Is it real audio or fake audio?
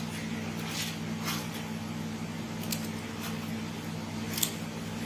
real